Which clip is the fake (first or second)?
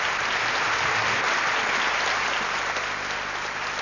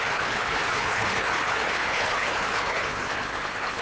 second